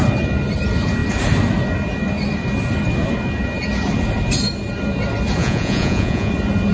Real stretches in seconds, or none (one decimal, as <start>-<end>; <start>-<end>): 0.0-5.4; 6.3-6.7